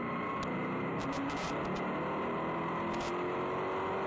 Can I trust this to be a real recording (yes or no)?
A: yes